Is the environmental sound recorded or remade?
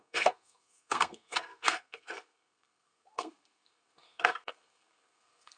remade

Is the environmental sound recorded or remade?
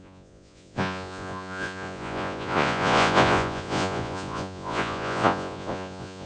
remade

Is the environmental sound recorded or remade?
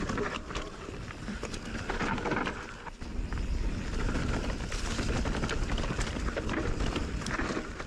remade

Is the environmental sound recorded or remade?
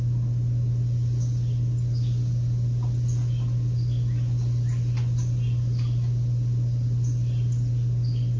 recorded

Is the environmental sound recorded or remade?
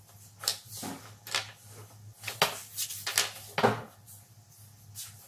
recorded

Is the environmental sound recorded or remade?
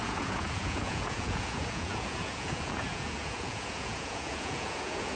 remade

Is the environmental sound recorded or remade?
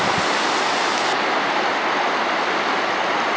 recorded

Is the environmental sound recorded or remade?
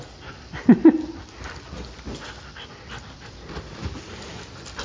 recorded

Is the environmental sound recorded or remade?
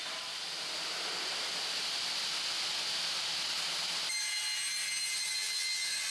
recorded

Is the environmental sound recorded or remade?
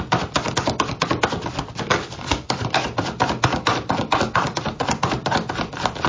recorded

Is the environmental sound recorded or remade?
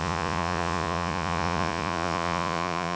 remade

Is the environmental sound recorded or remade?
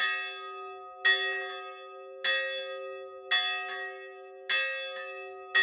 recorded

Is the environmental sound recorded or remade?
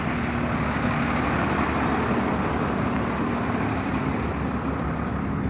recorded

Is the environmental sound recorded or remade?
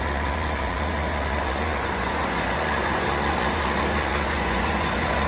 remade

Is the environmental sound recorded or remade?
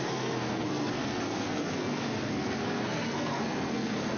remade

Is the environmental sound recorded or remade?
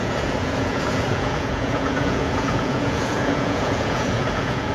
remade